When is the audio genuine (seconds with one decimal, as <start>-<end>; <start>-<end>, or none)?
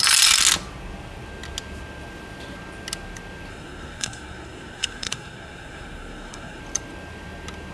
0.0-3.5; 6.6-7.7